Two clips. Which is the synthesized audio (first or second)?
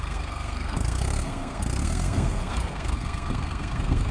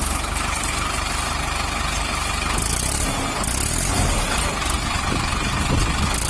first